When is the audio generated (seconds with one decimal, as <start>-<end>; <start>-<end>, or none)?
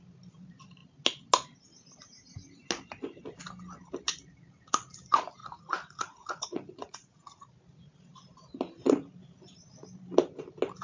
5.4-7.4